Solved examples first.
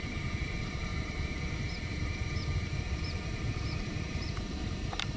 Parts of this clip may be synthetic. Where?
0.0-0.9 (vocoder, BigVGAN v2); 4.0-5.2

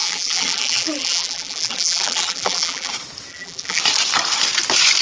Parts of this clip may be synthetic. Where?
0.0-2.9 (vocoder, BigVGAN v2); 3.3-3.8

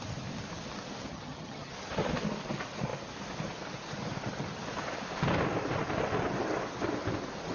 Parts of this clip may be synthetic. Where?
1.1-1.7 (vocoder, HiFi-GAN)

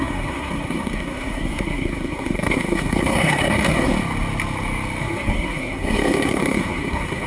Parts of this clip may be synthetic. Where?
0.0-3.9 (codec, SNAC); 5.0-7.3

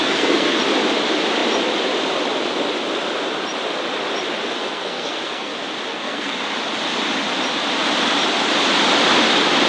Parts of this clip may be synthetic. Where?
0.0-0.6 (codec, SNAC); 4.6-5.5; 5.9-6.4

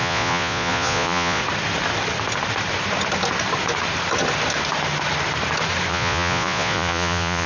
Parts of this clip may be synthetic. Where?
0.0-1.4 (vocoder, Vocos); 5.9-7.5

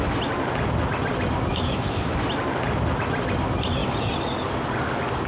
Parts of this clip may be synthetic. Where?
1.5-2.1 (autoencoder, DAC-VAE)

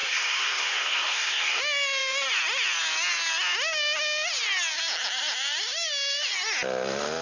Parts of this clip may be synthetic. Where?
0.0-1.6 (codec, SNAC)